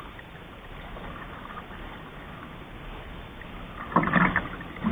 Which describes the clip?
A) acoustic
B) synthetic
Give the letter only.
A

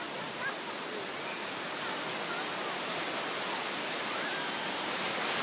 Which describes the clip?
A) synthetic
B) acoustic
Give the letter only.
B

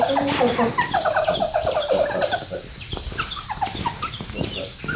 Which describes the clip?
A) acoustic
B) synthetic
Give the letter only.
A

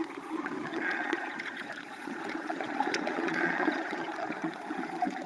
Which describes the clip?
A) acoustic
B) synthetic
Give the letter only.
B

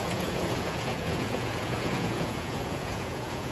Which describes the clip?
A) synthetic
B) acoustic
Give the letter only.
A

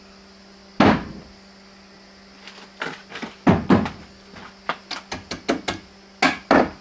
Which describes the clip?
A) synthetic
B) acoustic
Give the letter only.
B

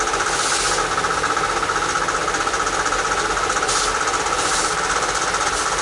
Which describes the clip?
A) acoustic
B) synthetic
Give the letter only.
A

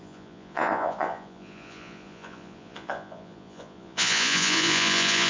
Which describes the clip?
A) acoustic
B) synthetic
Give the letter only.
B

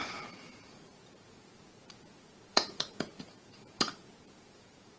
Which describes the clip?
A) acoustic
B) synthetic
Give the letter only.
B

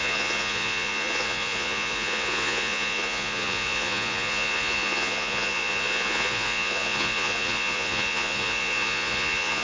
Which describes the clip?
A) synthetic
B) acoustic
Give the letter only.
A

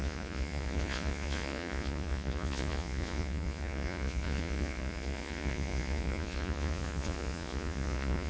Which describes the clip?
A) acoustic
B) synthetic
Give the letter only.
B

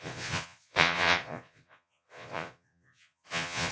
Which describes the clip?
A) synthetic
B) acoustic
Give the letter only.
A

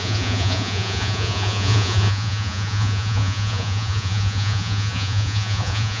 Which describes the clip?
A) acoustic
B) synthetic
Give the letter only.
B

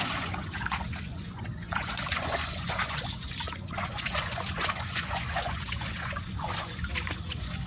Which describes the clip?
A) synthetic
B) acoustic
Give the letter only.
A